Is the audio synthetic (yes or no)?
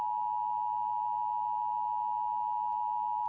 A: no